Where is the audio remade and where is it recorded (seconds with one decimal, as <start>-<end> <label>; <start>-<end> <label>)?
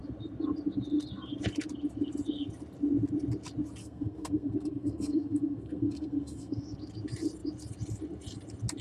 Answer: 0.0-3.8 recorded; 3.8-6.6 remade; 6.6-8.8 recorded